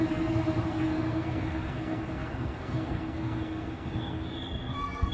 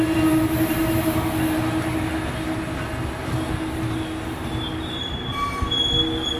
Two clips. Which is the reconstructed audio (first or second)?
first